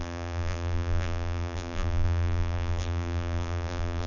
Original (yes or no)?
no